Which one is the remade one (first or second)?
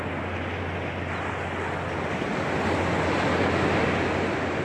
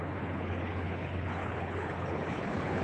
second